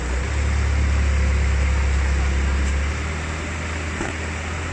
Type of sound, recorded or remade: recorded